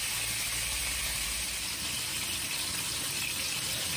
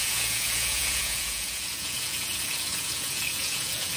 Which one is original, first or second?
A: first